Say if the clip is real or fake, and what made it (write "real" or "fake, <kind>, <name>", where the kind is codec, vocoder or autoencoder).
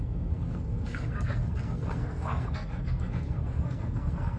fake, codec, SNAC